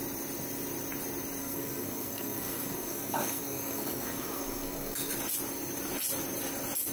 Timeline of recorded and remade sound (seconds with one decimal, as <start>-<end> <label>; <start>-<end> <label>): 0.0-1.4 recorded; 1.4-5.1 remade; 5.1-6.9 recorded